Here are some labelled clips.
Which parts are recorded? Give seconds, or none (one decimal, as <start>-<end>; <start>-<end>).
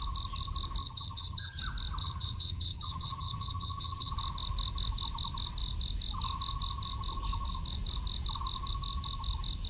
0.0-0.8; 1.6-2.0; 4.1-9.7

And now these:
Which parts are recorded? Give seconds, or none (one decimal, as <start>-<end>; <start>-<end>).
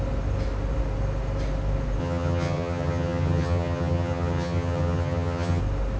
0.0-2.0; 5.6-6.0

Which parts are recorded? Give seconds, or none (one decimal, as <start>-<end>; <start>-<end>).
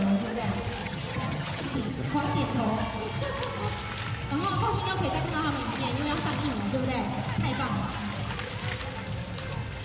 0.0-0.8; 2.1-9.8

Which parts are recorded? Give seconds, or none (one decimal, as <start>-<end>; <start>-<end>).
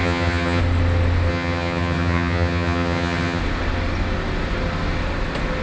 0.6-1.3; 3.4-5.6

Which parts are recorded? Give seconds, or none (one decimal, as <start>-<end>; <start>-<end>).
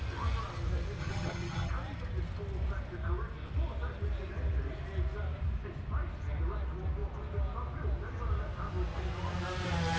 0.0-1.0; 1.7-10.0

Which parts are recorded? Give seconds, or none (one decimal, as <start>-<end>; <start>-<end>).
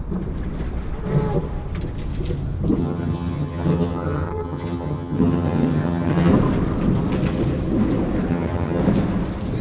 0.0-2.8; 6.3-8.3; 8.8-9.6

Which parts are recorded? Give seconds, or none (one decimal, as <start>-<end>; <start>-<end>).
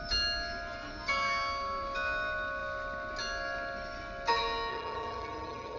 0.0-4.7